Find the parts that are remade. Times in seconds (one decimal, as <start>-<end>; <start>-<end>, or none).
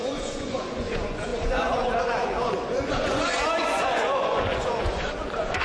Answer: 0.0-5.6